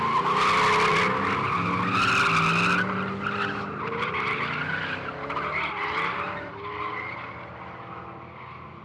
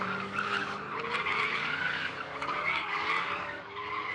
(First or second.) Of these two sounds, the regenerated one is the second